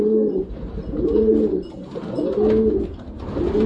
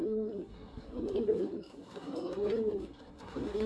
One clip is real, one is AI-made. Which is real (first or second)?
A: first